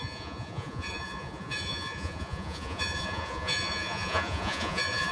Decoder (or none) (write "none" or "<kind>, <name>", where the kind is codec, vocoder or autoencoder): vocoder, Vocos